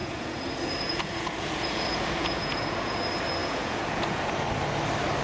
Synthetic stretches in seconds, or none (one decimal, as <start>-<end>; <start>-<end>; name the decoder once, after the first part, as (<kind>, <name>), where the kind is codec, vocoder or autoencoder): 0.0-3.0 (vocoder, Vocos); 3.4-4.3